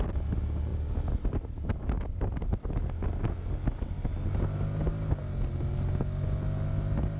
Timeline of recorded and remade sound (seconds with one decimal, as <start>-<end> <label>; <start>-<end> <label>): 0.0-7.2 recorded